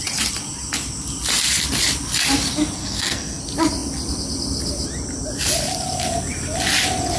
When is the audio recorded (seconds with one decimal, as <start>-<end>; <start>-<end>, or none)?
0.0-2.8; 3.4-7.2